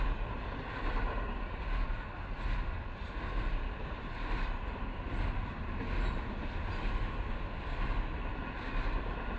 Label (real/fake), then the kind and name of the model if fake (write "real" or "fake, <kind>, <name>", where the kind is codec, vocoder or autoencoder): real